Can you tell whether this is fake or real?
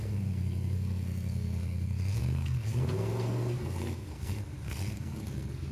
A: fake